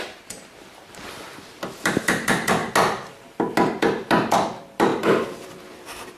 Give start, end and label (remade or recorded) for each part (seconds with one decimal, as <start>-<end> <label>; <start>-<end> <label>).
0.0-2.6 remade; 2.6-4.3 recorded; 4.3-6.2 remade